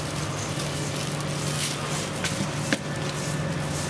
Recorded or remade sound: recorded